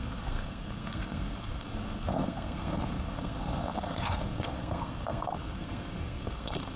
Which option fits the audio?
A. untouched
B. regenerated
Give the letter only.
B